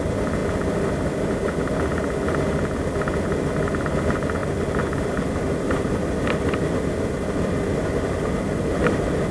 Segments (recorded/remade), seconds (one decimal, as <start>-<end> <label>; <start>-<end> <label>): 0.0-9.3 recorded